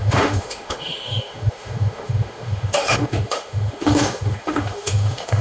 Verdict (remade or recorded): remade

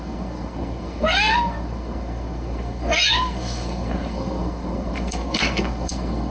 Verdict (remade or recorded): remade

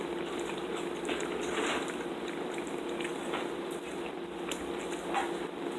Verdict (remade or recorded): recorded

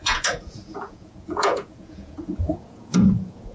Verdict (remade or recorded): remade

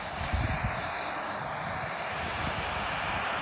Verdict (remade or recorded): recorded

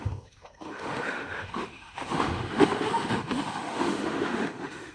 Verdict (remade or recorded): remade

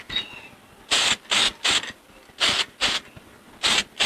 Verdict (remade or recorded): recorded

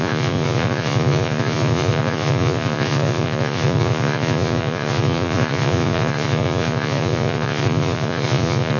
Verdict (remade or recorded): remade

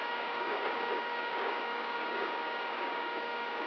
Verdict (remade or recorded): remade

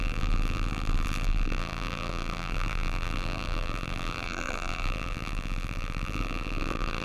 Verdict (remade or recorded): remade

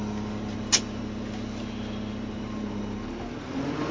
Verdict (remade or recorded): recorded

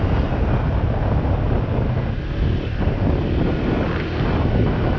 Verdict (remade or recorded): recorded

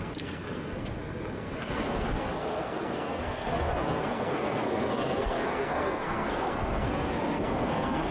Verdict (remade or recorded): remade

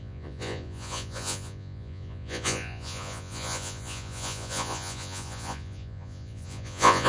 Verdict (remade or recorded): remade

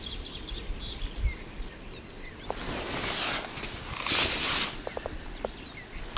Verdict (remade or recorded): recorded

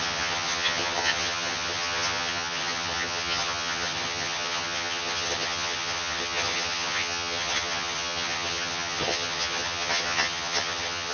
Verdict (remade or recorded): remade